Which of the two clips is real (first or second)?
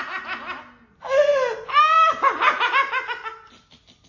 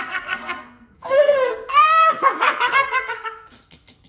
first